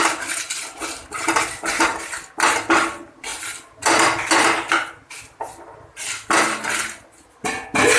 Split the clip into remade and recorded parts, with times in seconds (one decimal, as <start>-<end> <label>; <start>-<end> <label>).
0.0-8.0 recorded